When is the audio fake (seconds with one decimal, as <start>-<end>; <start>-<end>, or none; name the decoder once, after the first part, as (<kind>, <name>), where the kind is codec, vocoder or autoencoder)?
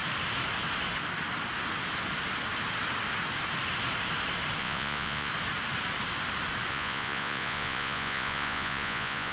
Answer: 4.6-5.3 (vocoder, Vocos); 6.7-9.3